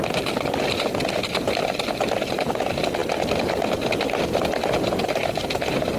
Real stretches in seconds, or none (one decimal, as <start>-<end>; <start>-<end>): 0.0-6.0